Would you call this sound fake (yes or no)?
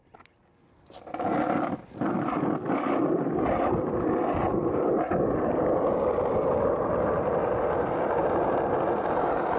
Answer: no